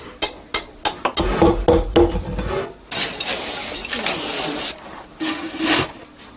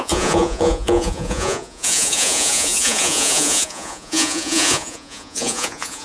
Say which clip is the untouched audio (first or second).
first